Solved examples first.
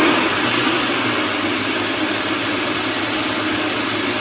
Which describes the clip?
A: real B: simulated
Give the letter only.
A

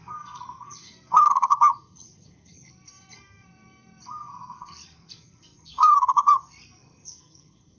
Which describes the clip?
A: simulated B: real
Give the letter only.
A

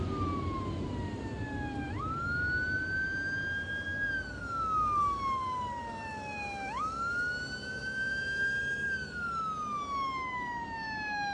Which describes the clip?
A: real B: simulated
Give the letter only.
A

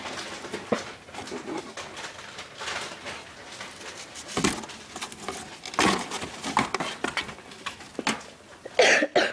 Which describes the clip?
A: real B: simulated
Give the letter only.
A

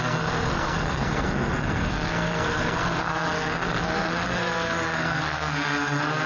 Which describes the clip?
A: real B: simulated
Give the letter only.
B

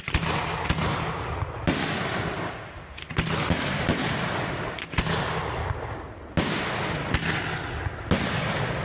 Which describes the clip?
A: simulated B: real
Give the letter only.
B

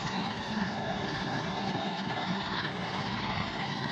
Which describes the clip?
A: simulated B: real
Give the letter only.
A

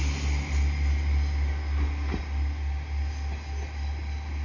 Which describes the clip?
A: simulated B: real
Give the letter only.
B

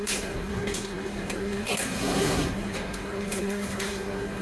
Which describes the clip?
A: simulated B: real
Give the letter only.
A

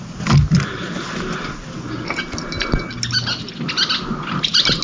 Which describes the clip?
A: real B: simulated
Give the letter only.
A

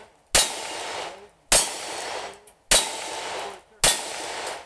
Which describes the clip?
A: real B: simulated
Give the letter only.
A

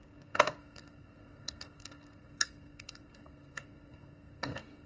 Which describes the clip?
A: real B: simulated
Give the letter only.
B